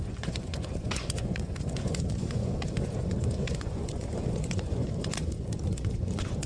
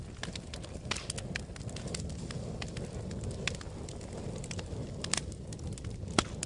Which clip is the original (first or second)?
second